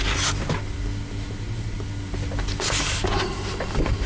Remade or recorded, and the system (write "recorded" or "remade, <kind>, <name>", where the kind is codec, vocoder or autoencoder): recorded